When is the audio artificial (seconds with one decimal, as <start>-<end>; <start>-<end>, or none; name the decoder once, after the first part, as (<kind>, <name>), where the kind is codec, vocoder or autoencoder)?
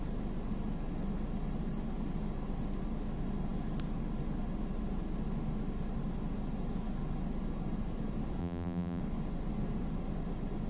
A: 8.4-9.0 (vocoder, BigVGAN v2)